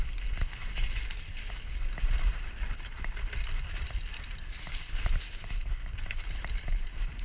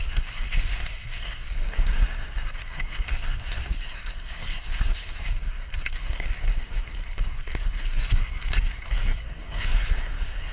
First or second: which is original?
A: first